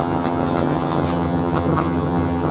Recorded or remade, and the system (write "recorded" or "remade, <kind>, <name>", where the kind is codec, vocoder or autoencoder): remade, vocoder, HiFi-GAN